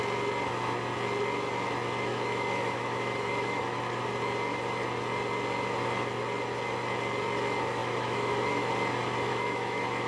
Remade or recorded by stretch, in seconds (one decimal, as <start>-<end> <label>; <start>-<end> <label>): 0.0-2.1 recorded; 2.1-4.0 remade; 4.0-7.8 recorded; 7.8-8.7 remade; 8.7-9.3 recorded; 9.3-10.1 remade